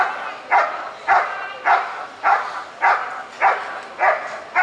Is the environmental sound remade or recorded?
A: recorded